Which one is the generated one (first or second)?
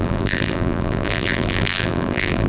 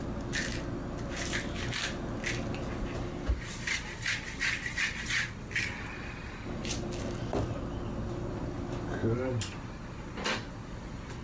first